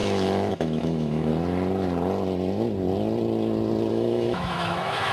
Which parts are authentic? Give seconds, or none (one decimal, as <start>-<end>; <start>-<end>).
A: 1.3-3.9